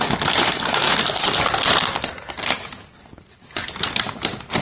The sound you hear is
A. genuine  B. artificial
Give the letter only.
B